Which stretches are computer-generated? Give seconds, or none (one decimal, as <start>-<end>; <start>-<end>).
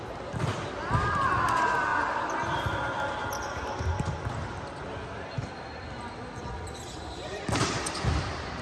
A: none